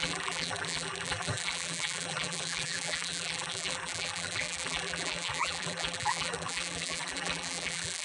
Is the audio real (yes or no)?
no